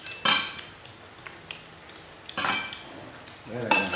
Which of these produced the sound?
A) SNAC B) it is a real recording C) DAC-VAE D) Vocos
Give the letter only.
B